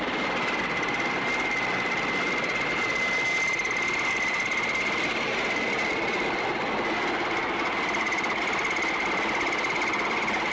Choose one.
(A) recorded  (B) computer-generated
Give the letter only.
A